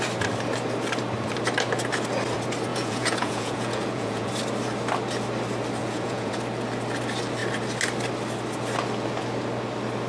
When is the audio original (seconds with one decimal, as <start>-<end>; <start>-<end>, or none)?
0.0-2.7; 4.3-5.8; 6.3-10.1